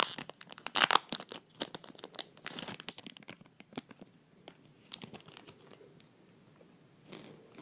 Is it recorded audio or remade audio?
recorded